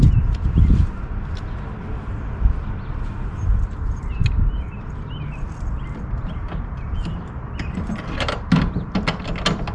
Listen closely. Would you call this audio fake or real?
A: real